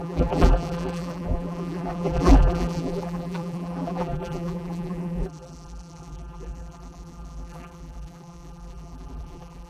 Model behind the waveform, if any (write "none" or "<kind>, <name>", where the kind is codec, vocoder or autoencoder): vocoder, BigVGAN v2